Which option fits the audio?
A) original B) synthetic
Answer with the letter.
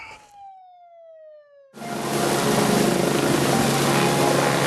A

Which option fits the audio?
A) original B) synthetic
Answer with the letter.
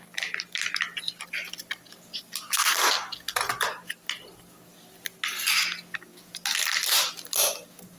A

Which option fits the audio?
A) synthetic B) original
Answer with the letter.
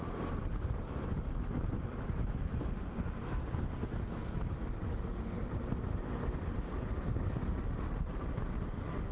B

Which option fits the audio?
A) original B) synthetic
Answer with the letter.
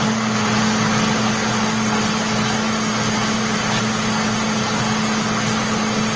A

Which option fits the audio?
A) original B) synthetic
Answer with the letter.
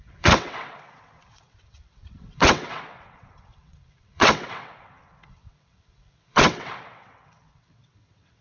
B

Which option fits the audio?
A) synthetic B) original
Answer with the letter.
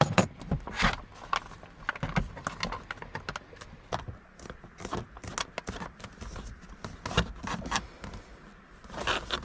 B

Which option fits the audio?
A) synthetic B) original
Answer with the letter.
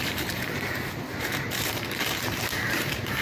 A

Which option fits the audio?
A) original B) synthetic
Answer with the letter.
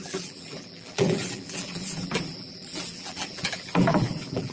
B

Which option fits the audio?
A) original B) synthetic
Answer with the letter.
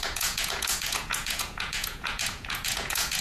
B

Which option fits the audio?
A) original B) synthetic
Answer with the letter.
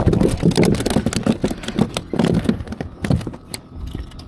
A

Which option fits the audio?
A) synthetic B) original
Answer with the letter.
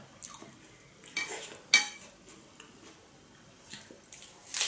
B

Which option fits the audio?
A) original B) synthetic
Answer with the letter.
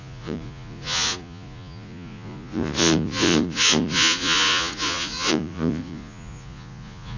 B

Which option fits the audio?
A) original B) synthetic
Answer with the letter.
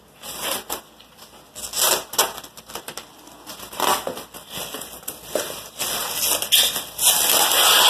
A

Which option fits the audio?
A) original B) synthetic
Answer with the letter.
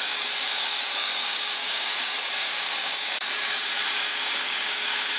B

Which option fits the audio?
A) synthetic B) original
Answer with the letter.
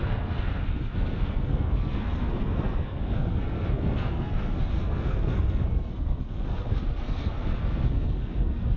A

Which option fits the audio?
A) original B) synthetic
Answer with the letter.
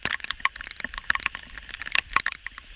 A